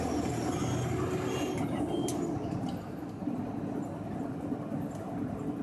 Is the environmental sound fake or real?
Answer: real